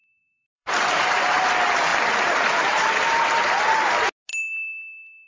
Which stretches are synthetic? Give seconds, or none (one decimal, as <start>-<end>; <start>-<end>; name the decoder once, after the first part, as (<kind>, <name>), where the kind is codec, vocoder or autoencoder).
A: 0.0-1.0 (vocoder, BigVGAN v2); 1.9-3.6; 4.3-5.3